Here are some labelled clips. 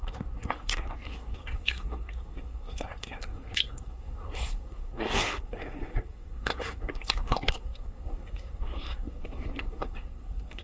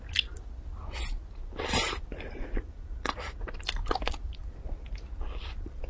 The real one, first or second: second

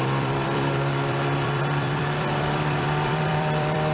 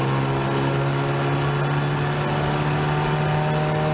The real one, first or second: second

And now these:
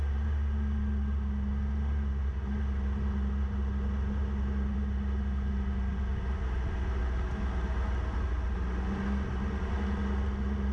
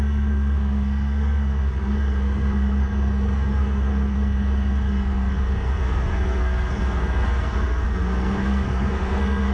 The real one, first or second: first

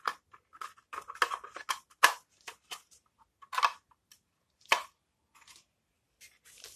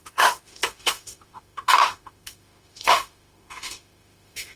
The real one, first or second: first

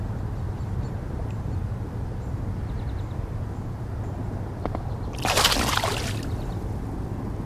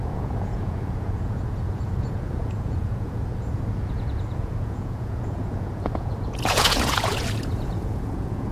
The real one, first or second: first